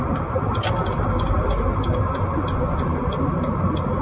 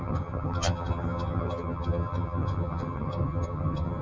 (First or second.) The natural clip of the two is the first